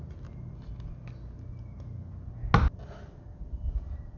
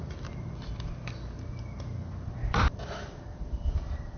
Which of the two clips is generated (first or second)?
second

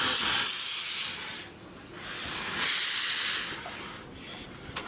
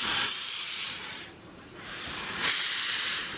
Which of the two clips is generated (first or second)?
second